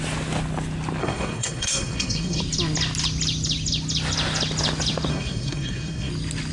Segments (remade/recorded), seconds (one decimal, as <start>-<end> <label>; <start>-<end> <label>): 0.0-1.0 recorded; 1.0-2.4 remade; 2.4-5.1 recorded; 5.1-6.1 remade; 6.1-6.5 recorded